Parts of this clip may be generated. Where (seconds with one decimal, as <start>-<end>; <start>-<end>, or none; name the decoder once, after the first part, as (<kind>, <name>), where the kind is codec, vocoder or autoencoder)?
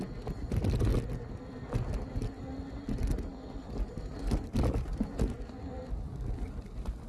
none